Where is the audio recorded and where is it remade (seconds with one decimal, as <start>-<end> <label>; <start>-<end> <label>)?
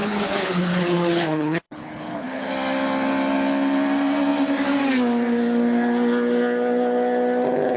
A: 0.0-2.5 remade; 2.5-7.8 recorded